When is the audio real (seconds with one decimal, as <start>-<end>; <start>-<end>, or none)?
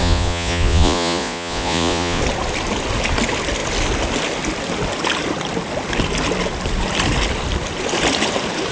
2.2-8.7